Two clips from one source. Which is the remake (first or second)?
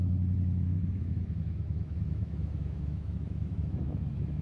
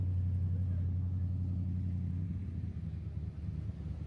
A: first